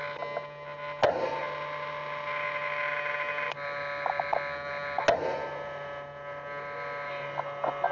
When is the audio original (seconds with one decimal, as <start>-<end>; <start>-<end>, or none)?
0.0-7.9